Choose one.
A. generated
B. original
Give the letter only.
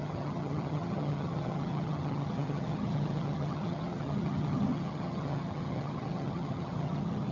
A